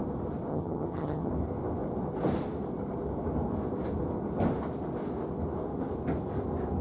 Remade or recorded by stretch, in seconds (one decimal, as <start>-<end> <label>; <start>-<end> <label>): 0.0-0.5 recorded; 0.5-1.3 remade; 1.3-6.8 recorded